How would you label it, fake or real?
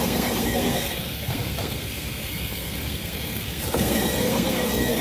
fake